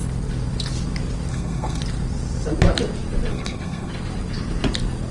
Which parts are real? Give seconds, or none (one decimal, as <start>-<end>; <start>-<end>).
0.0-1.3; 1.8-3.3; 3.9-5.1